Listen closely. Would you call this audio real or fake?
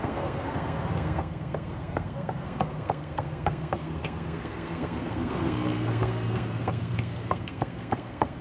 fake